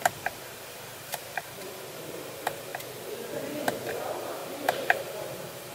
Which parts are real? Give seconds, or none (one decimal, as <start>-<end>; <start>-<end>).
2.7-3.9